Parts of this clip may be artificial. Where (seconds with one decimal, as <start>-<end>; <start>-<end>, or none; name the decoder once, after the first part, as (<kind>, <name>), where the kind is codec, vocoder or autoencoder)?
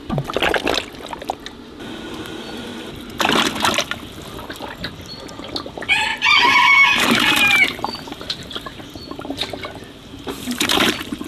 6.1-11.3 (vocoder, BigVGAN v2)